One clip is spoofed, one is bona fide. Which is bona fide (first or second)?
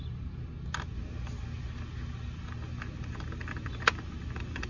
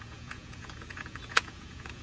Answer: first